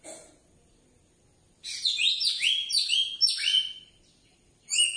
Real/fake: real